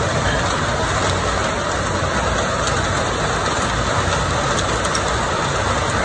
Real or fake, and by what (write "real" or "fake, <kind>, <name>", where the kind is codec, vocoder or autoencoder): real